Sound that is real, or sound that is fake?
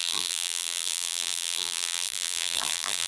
fake